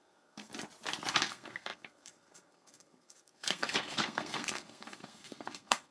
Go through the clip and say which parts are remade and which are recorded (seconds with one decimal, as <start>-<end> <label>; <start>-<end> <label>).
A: 0.0-0.5 remade; 0.5-1.1 recorded; 1.1-5.9 remade